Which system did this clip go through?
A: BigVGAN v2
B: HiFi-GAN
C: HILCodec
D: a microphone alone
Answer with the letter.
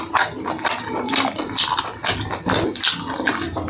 D